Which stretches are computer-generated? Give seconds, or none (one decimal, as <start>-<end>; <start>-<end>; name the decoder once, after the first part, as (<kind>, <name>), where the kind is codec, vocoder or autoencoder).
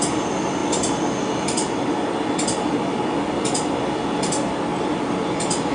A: none